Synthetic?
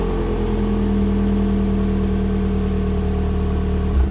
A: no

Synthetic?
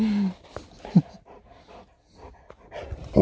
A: no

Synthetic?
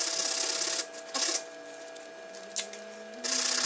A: no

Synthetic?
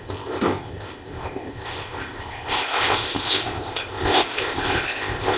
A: yes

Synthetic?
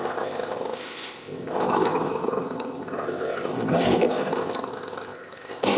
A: yes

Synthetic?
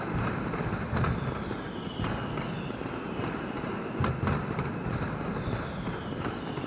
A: no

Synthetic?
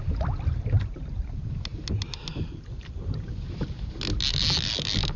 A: no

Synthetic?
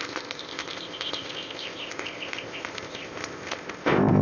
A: yes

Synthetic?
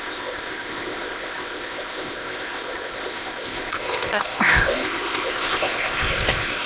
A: yes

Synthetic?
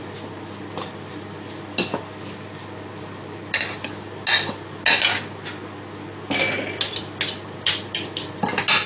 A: no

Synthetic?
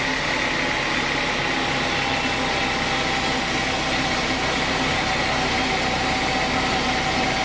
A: no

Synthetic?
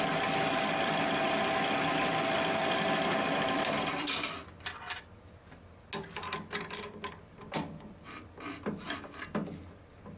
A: no